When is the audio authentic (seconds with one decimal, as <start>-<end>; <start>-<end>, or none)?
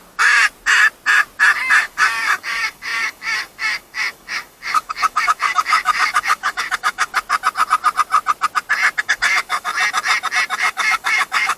0.0-1.8; 7.1-9.0; 9.7-10.6